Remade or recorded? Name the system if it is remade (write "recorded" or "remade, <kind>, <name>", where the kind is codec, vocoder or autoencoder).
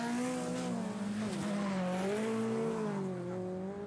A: recorded